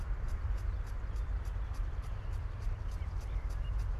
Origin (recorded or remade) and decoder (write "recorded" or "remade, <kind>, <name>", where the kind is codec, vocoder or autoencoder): recorded